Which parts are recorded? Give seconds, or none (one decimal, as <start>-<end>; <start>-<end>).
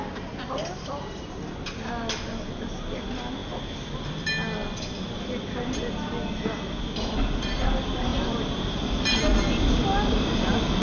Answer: 0.0-10.8